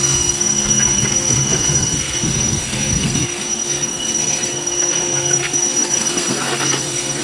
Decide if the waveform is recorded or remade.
remade